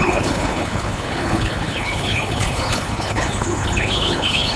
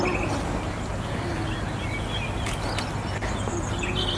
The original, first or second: second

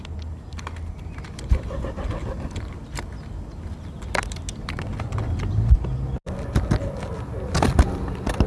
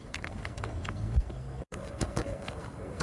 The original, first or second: first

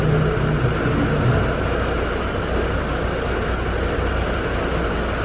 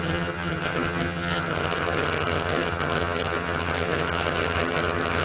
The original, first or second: first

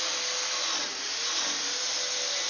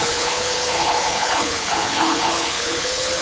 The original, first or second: first